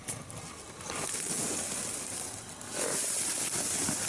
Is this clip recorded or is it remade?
recorded